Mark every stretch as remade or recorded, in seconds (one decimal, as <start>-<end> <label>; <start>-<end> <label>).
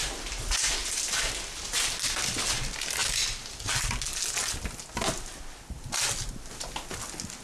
0.0-0.8 recorded; 0.8-1.3 remade; 1.3-3.0 recorded; 3.0-4.0 remade; 4.0-7.4 recorded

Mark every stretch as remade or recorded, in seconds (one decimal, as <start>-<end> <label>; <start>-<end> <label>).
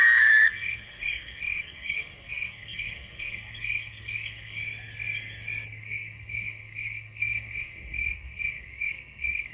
0.0-4.6 remade; 4.6-5.8 recorded; 5.8-9.5 remade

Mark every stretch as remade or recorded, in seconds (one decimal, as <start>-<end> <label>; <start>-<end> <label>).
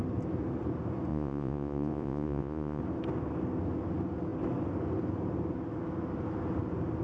0.0-1.1 recorded; 1.1-2.8 remade; 2.8-7.0 recorded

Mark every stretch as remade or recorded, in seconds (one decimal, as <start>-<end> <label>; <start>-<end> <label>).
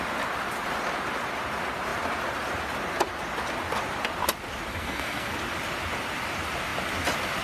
0.0-4.7 recorded; 4.7-5.3 remade; 5.3-7.4 recorded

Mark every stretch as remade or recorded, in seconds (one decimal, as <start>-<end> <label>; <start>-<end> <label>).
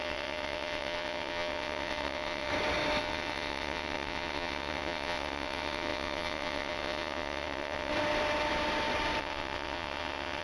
0.0-2.5 remade; 2.5-3.0 recorded; 3.0-7.9 remade; 7.9-9.2 recorded; 9.2-10.4 remade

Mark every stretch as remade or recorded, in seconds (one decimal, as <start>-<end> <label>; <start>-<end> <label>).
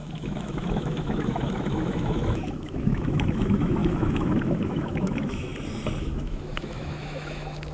0.0-5.5 remade; 5.5-6.0 recorded; 6.0-7.7 remade